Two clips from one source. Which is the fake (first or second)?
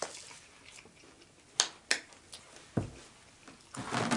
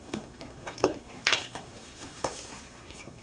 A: second